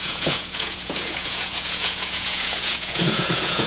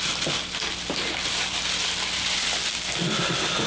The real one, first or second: second